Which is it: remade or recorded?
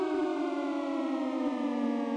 remade